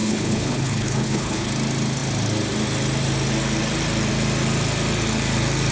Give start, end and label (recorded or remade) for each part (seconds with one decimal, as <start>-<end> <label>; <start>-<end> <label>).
0.0-1.5 remade; 1.5-5.7 recorded